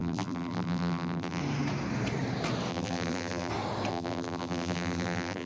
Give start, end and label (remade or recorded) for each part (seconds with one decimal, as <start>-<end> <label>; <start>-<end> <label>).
0.0-1.4 remade; 1.4-2.7 recorded; 2.7-3.5 remade; 3.5-3.9 recorded; 3.9-5.5 remade

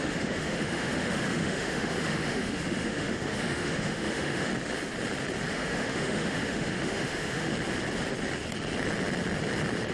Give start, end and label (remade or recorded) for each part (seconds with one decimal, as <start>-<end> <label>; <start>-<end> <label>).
0.0-4.5 remade; 4.5-5.5 recorded; 5.5-7.5 remade; 7.5-9.9 recorded

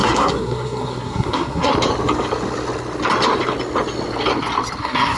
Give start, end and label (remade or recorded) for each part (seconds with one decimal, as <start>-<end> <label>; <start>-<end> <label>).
0.0-1.7 remade; 1.7-4.8 recorded; 4.8-5.2 remade

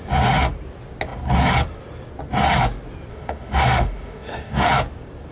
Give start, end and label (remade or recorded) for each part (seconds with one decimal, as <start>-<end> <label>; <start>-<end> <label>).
0.0-3.1 recorded; 3.1-4.7 remade; 4.7-5.3 recorded

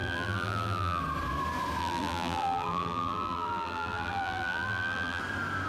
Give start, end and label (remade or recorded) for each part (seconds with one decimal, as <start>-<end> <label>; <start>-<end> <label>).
0.0-1.0 remade; 1.0-1.8 recorded; 1.8-5.2 remade; 5.2-5.7 recorded